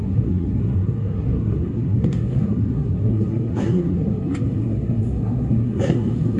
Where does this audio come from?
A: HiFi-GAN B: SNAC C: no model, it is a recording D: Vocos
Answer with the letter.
B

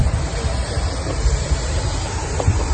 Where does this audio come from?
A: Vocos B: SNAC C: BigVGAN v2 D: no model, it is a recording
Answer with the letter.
D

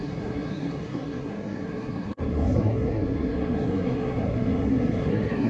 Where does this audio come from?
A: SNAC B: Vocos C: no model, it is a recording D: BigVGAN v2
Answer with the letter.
A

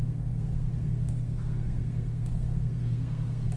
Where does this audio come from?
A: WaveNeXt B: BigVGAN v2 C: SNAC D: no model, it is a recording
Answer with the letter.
C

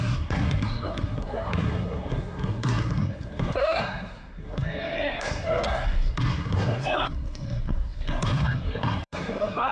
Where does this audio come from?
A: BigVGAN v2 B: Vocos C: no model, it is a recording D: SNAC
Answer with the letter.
D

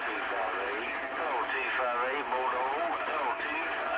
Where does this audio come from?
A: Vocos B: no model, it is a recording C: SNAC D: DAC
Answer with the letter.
B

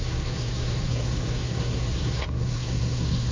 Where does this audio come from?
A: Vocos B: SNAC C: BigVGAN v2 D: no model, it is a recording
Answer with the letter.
B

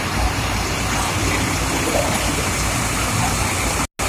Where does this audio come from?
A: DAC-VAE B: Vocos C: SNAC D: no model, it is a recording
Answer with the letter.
D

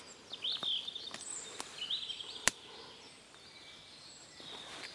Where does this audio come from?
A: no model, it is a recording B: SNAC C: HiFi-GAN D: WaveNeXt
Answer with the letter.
A